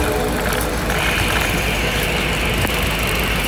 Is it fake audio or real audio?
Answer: real